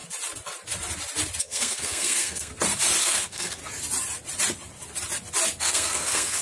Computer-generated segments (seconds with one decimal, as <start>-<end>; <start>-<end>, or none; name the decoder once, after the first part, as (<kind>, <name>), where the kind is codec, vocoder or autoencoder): 1.4-2.5 (codec, SNAC); 3.0-3.6; 5.6-6.4